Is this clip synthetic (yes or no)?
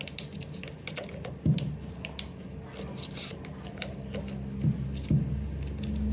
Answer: no